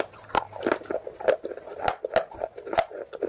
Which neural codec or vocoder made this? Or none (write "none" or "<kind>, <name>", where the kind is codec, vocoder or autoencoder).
none